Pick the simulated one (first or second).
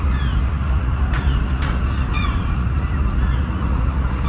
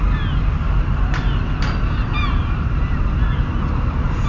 first